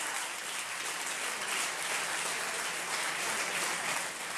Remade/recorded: recorded